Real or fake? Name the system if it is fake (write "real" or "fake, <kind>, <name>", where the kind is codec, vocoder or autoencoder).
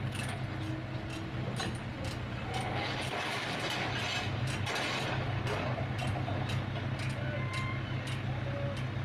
real